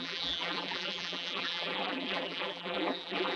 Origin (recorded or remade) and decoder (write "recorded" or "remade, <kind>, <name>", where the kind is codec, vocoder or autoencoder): remade, vocoder, BigVGAN v2